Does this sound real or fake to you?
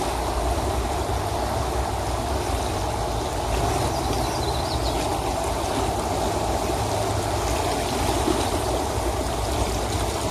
real